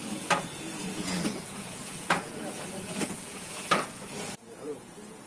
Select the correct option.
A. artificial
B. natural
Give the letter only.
A